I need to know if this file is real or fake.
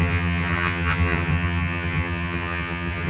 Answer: fake